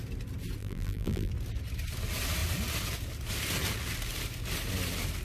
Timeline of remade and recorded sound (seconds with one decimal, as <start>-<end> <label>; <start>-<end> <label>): 0.0-0.6 recorded; 0.6-1.3 remade; 1.3-5.2 recorded